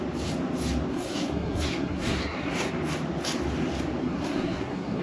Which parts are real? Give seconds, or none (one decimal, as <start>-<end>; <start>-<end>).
0.0-0.9; 2.7-4.0